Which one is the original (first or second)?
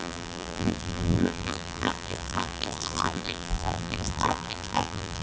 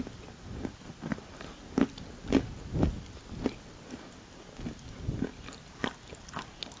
second